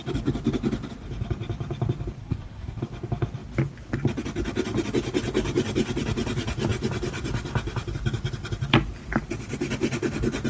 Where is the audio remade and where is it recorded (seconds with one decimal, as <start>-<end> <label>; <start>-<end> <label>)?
0.0-2.2 recorded; 2.2-2.8 remade; 2.8-10.5 recorded